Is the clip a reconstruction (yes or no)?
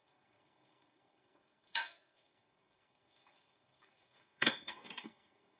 yes